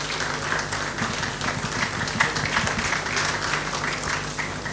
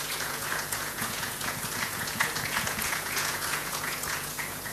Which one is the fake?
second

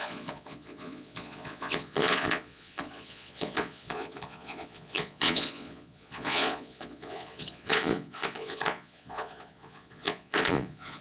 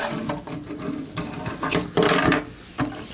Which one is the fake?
first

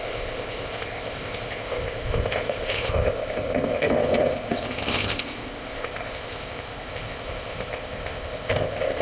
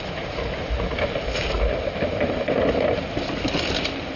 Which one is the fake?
first